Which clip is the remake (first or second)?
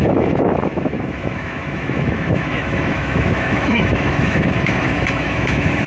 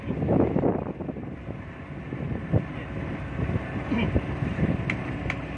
first